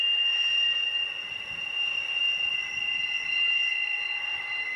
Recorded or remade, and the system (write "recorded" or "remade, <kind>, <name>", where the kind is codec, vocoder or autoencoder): recorded